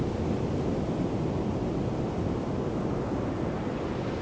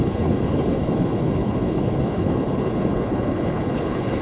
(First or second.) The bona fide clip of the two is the first